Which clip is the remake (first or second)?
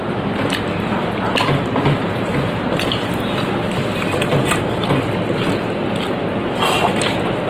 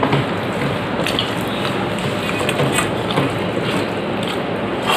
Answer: first